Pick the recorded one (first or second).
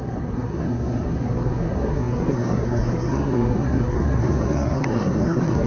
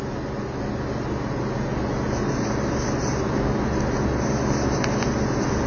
second